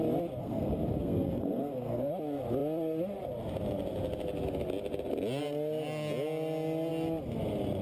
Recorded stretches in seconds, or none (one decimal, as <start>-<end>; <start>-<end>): 0.0-0.4; 2.1-7.8